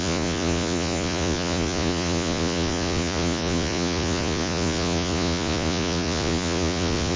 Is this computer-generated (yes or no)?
yes